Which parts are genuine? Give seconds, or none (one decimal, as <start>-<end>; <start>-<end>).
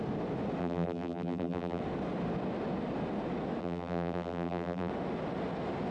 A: 0.0-0.6; 1.8-3.6; 4.9-5.9